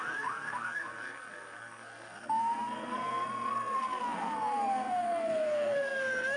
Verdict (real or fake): fake